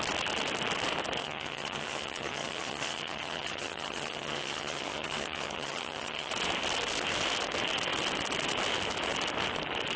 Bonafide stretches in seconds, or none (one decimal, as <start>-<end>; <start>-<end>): 0.0-1.2; 6.3-10.0

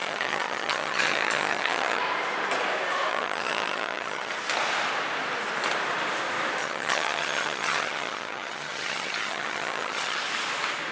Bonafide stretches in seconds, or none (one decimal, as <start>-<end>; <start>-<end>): 2.0-3.1; 4.3-6.6; 10.2-10.9

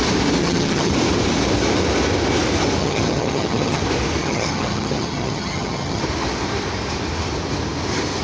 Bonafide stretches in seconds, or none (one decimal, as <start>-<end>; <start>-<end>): 0.0-0.4; 0.9-2.8; 3.8-4.2; 6.0-8.2

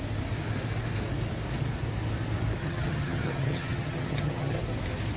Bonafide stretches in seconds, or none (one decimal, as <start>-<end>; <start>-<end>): 0.0-2.6; 4.6-5.2

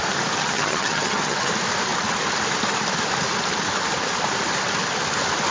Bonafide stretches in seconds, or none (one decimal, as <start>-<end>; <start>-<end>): 0.0-0.4; 1.5-5.5

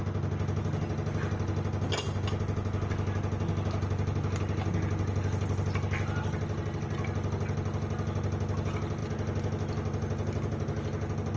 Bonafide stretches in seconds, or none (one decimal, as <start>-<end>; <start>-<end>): 0.0-11.4